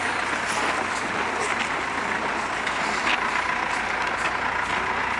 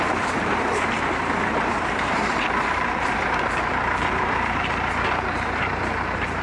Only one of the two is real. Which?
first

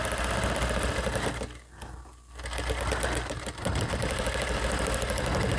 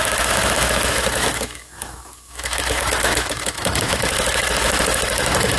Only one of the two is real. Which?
first